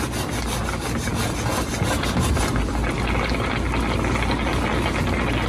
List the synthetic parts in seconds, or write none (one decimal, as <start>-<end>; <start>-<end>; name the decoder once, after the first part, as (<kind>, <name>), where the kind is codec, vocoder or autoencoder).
none